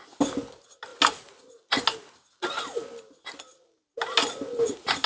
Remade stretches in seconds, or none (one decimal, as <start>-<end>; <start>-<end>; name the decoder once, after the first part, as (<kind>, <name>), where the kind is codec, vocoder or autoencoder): none